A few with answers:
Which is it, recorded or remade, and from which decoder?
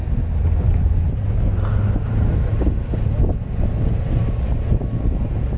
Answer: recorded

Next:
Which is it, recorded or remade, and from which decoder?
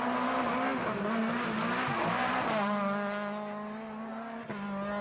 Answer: recorded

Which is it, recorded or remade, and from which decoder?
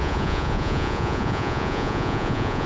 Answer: remade, vocoder, Vocos